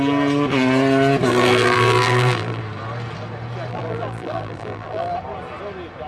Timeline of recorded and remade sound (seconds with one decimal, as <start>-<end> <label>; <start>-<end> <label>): 0.0-1.3 recorded; 1.3-2.6 remade; 2.6-3.7 recorded; 3.7-5.1 remade; 5.1-6.1 recorded